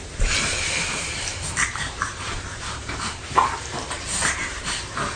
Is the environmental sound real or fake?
fake